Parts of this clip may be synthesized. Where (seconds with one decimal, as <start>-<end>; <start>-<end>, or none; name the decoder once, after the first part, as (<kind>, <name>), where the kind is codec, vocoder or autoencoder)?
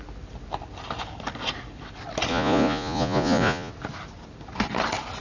2.3-3.7 (vocoder, Vocos)